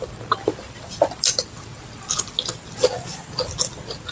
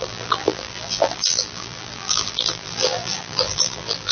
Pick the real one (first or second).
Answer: first